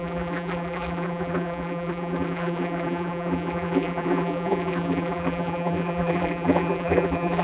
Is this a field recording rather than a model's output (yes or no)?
no